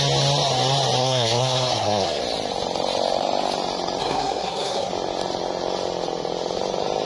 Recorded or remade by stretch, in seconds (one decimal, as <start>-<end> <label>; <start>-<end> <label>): 0.0-1.0 recorded; 1.0-2.2 remade; 2.2-4.0 recorded; 4.0-4.9 remade; 4.9-7.1 recorded